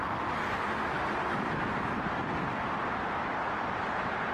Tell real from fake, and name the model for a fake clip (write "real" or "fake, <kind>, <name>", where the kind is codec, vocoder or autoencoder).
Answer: real